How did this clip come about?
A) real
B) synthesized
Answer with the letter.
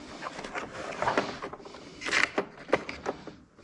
A